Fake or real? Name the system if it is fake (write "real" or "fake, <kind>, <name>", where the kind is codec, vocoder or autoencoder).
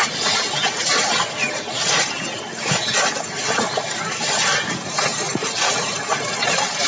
real